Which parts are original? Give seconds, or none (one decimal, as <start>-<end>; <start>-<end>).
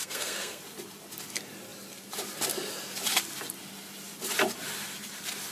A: 0.6-5.5